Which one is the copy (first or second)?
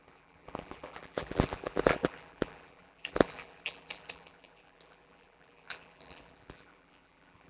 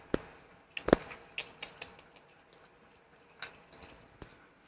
first